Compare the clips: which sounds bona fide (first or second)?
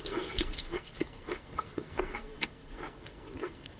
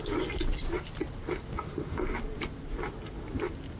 second